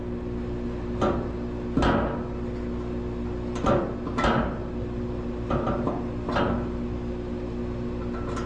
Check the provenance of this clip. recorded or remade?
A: recorded